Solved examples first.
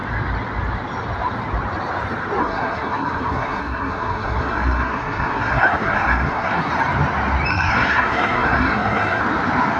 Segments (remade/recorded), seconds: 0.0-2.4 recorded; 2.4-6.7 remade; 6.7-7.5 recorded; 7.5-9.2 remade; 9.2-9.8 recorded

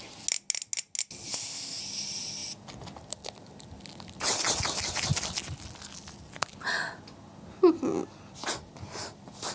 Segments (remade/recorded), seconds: 0.0-1.3 recorded; 1.3-1.8 remade; 1.8-9.5 recorded

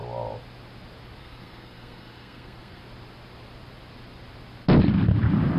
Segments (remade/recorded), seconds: 0.0-1.2 recorded; 1.2-2.8 remade; 2.8-5.6 recorded

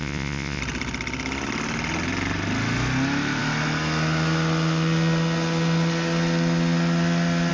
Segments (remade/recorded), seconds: 0.0-0.6 remade; 0.6-7.5 recorded

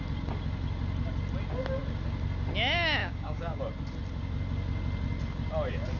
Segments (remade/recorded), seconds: 0.0-3.0 recorded; 3.0-3.6 remade; 3.6-6.0 recorded

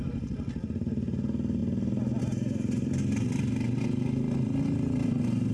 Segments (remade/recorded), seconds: 0.0-5.5 recorded

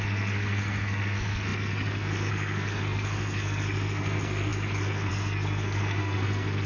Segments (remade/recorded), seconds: 0.0-6.7 remade

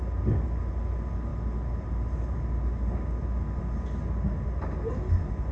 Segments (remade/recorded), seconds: 0.0-5.5 recorded